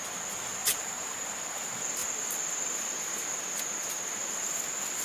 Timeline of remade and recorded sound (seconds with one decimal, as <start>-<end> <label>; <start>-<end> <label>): 0.0-0.6 recorded; 0.6-1.4 remade; 1.4-5.0 recorded